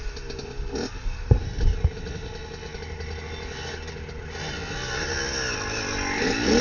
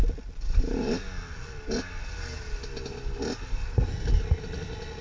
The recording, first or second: first